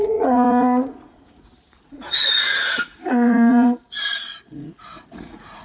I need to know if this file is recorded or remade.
remade